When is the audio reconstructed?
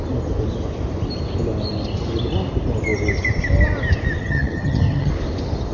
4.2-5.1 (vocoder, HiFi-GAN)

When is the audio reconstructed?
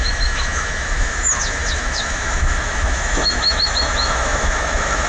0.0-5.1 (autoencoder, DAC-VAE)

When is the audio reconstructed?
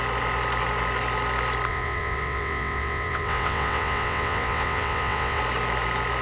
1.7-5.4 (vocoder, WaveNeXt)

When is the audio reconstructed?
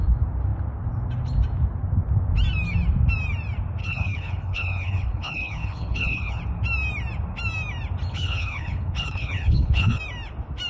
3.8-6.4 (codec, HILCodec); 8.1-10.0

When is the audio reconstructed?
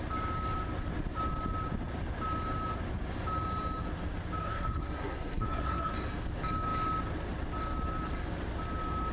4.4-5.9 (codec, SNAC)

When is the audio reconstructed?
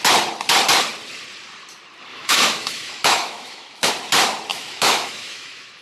2.1-3.9 (autoencoder, DAC-VAE); 4.5-5.8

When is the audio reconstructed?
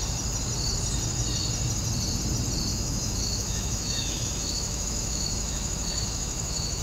2.7-6.8 (autoencoder, DAC-VAE)